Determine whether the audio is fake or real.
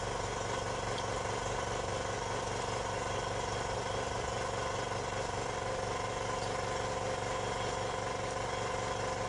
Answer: real